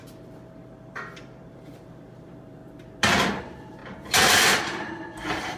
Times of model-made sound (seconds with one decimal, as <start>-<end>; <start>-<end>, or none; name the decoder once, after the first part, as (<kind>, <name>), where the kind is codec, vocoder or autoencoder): 0.0-2.6 (vocoder, BigVGAN v2); 3.4-5.6

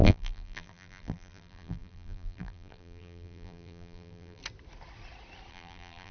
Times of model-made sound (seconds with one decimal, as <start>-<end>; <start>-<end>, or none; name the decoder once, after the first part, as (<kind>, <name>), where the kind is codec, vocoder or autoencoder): 0.0-4.4 (vocoder, BigVGAN v2); 5.5-6.1